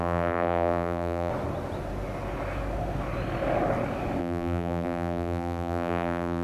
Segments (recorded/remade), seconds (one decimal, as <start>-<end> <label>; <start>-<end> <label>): 0.0-1.3 remade; 1.3-4.2 recorded; 4.2-6.4 remade